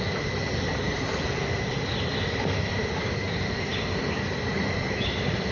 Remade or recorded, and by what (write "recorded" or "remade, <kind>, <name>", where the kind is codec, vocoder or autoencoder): recorded